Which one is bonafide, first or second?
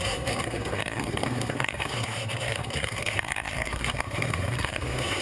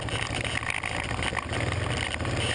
second